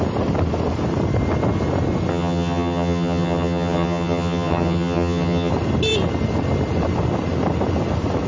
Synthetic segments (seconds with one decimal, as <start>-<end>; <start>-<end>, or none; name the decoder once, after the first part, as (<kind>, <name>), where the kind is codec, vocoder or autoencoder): 2.1-5.5 (vocoder, HiFi-GAN)